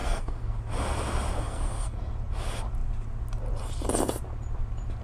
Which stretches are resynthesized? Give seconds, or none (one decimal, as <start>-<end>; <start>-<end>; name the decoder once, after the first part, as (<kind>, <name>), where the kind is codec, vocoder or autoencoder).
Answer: 0.0-0.6 (codec, SNAC); 1.4-2.0